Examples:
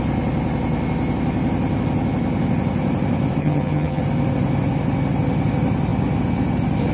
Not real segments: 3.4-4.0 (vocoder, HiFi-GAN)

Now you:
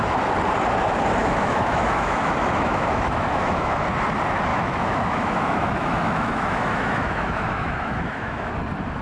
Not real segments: 1.2-3.8 (autoencoder, DAC-VAE); 4.5-8.5

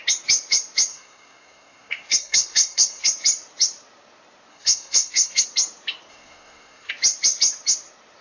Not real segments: 0.9-3.1 (codec, SNAC); 4.5-5.4; 6.1-6.9

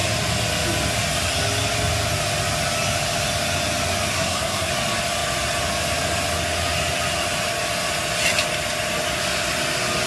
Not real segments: 4.1-4.7 (codec, SNAC)

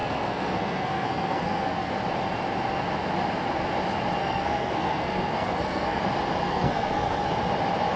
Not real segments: 0.0-1.9 (codec, SNAC); 4.2-6.0; 6.4-7.3

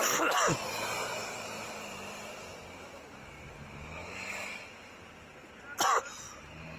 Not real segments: none

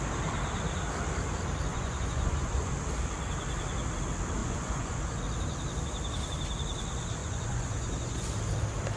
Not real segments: 1.7-2.7 (vocoder, Vocos); 4.4-5.2; 7.2-8.3